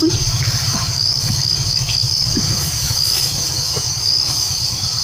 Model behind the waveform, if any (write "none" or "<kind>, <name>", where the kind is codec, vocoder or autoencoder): codec, DAC